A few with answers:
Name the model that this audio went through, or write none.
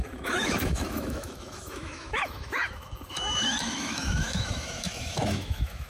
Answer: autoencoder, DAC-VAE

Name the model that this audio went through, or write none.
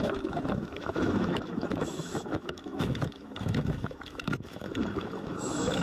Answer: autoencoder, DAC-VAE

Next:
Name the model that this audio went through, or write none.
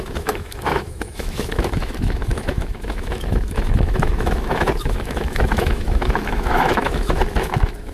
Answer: autoencoder, DAC-VAE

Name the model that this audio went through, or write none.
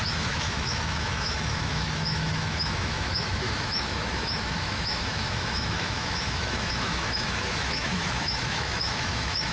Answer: autoencoder, DAC-VAE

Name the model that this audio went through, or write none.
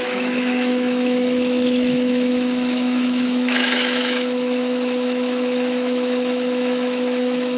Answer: autoencoder, DAC-VAE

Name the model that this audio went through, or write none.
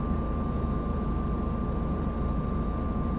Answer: none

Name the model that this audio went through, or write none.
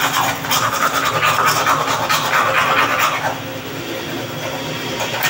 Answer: none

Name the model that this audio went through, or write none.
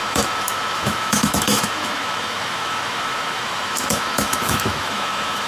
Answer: autoencoder, DAC-VAE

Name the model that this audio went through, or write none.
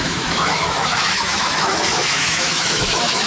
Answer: autoencoder, DAC-VAE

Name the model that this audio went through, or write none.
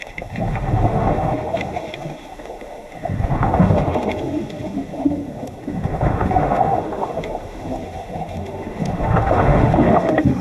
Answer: autoencoder, DAC-VAE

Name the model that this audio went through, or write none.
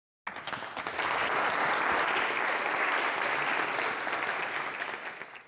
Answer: none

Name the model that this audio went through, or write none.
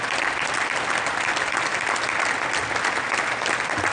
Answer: none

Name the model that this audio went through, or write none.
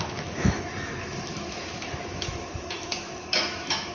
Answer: autoencoder, DAC-VAE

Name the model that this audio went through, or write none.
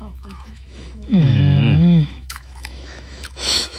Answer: autoencoder, DAC-VAE